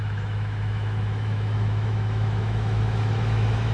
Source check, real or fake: fake